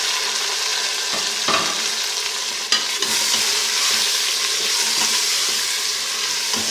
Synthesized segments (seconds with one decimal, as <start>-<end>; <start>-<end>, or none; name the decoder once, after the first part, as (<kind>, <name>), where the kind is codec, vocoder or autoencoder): none